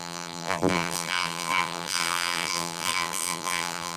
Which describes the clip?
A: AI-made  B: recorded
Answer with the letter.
A